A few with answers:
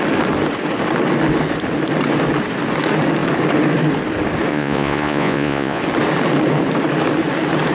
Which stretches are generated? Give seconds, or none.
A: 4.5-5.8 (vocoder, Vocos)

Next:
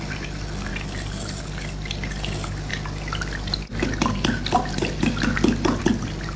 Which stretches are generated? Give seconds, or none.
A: none

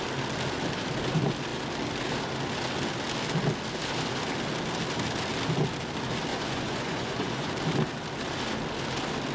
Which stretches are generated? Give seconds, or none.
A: 6.3-7.5 (vocoder, Vocos)

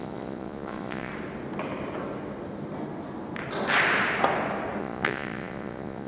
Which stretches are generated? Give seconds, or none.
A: 0.0-1.1 (vocoder, Vocos); 4.8-6.1

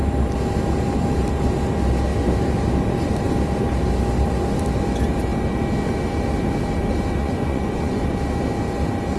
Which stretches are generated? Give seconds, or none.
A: 7.2-8.1 (vocoder, Vocos)

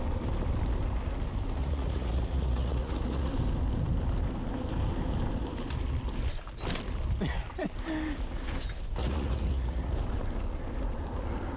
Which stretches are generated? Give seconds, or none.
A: 1.6-3.3 (vocoder, Vocos); 9.0-9.9

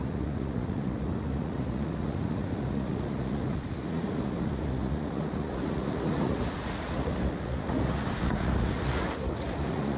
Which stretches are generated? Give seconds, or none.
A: 0.0-10.0 (vocoder, Vocos)